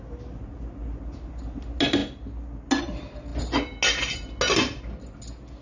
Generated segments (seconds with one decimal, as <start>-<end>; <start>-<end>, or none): none